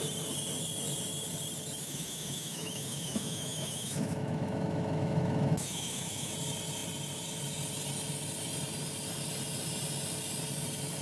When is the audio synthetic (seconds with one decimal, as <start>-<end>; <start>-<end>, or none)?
1.8-6.3